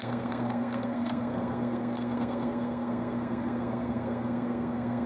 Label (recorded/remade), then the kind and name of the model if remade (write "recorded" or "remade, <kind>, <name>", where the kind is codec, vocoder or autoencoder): remade, codec, SNAC